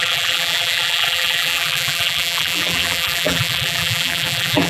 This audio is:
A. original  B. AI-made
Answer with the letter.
B